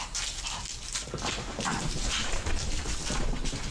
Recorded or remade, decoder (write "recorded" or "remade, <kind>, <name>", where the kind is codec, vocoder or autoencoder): remade, vocoder, BigVGAN v2